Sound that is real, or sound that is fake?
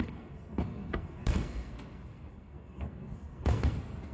fake